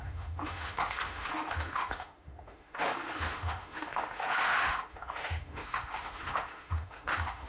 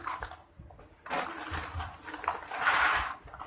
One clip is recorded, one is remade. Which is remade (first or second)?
first